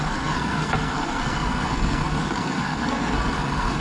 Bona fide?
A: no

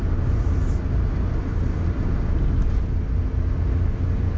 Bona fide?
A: yes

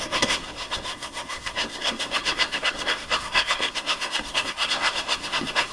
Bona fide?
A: no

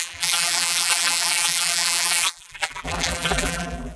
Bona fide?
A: no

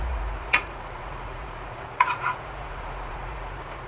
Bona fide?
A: no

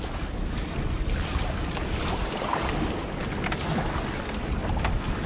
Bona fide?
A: yes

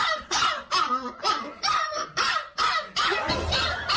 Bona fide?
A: yes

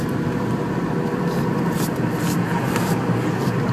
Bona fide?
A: yes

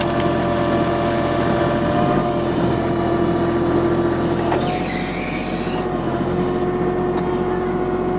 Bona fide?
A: yes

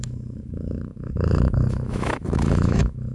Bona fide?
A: no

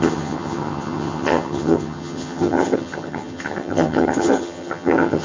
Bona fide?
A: no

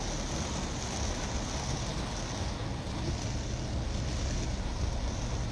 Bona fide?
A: yes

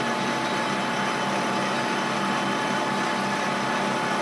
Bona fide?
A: yes